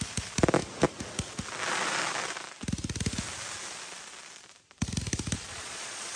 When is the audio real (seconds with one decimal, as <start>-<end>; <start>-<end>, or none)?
0.0-5.5

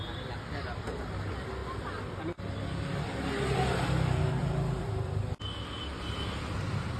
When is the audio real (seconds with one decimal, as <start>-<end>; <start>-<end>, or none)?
0.0-4.4; 5.2-7.0

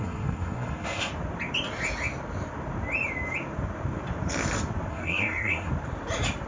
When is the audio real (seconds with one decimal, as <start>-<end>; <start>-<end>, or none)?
1.1-4.9; 5.7-6.5

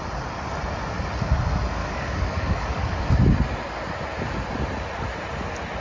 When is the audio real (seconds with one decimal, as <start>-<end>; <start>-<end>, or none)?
0.0-1.8; 3.1-5.8

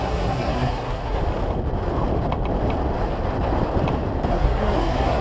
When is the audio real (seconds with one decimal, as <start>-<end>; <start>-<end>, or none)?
1.2-4.3